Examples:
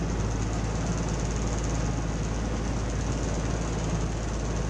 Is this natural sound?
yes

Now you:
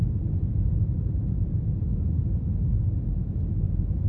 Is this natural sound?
yes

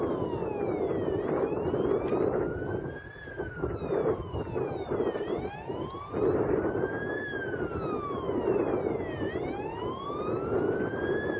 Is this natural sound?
yes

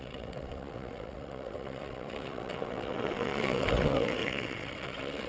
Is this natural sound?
no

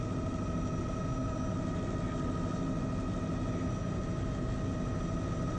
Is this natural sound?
yes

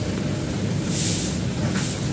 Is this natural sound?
yes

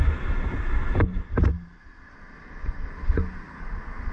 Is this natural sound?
yes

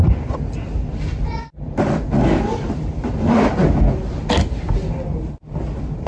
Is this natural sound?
yes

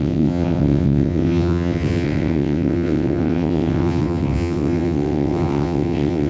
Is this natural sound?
no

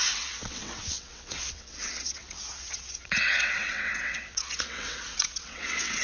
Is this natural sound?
no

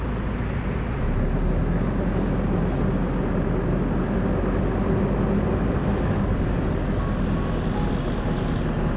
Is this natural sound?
yes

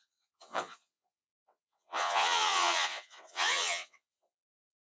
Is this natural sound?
no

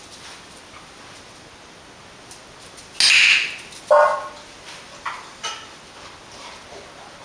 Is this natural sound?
yes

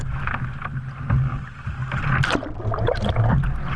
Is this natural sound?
yes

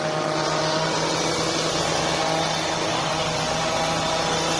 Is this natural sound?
yes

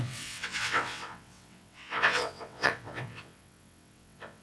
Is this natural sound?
no